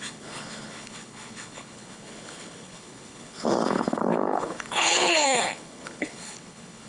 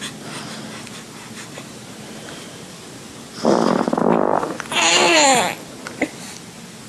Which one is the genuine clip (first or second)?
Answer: second